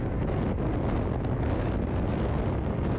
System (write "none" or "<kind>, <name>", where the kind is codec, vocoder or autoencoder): none